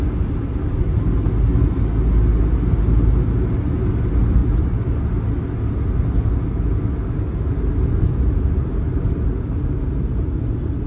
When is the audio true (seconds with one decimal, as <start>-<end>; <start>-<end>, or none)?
0.0-10.9